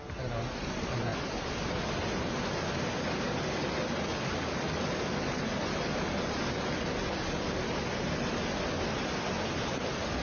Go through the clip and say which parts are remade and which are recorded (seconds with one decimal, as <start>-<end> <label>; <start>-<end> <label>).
0.0-1.1 recorded; 1.1-1.7 remade; 1.7-10.2 recorded